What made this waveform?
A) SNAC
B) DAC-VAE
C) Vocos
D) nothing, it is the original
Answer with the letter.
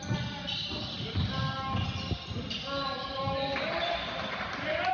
D